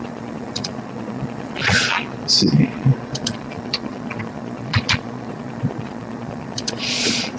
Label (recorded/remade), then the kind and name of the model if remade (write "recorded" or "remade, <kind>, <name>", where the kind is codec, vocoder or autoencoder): remade, vocoder, Vocos